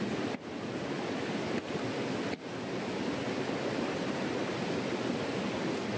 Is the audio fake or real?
real